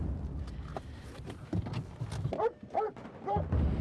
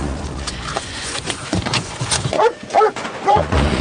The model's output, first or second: second